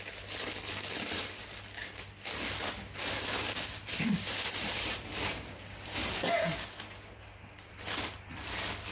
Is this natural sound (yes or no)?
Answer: yes